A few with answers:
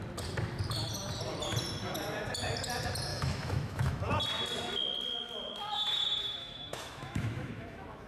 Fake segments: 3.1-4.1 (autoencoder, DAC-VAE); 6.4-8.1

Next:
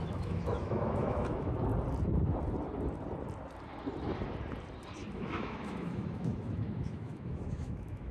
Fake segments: 0.0-1.7 (autoencoder, DAC-VAE); 5.1-8.1

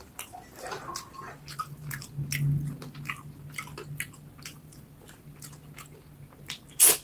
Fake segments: none

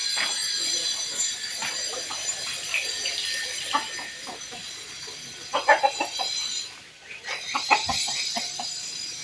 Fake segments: none